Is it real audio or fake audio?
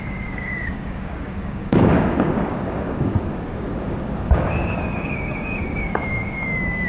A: fake